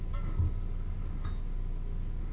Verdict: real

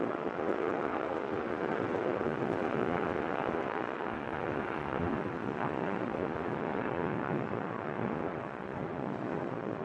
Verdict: fake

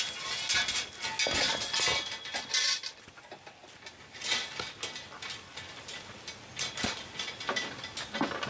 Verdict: real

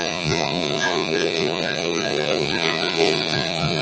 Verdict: fake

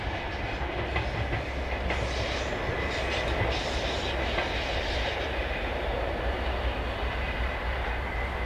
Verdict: real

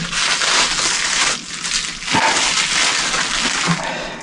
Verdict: real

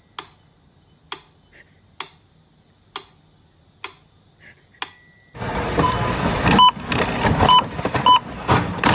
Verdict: real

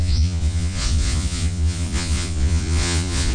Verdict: fake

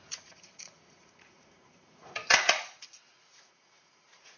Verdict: fake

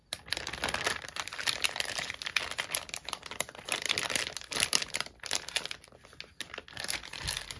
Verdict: real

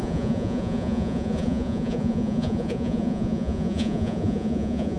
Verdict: fake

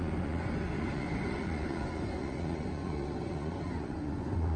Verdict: fake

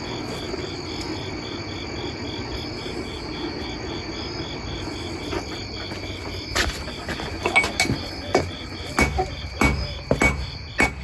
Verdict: real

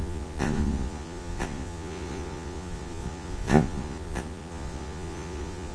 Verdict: fake